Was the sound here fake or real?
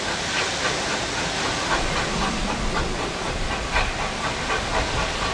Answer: real